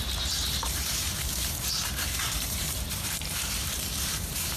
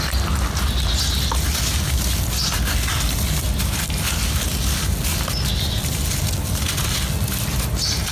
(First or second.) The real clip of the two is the second